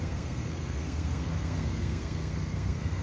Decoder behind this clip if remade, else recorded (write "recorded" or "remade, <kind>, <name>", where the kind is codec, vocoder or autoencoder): remade, codec, SNAC